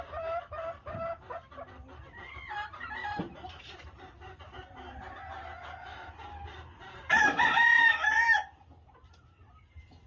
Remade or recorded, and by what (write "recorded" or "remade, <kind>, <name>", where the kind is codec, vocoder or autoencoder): recorded